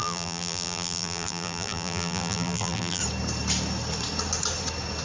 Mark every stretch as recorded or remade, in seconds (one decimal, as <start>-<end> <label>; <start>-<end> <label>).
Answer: 0.0-3.0 remade; 3.0-5.0 recorded